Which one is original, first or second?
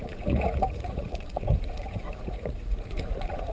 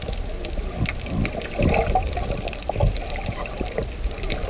second